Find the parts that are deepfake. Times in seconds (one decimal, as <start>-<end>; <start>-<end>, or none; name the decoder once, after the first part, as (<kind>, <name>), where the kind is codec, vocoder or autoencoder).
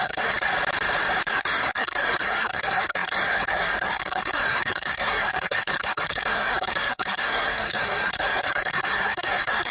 0.0-0.5 (codec, SNAC); 1.3-9.7